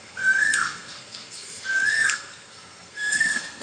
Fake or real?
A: fake